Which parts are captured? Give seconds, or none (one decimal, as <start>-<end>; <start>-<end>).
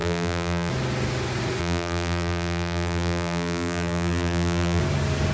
0.7-1.6; 4.8-5.3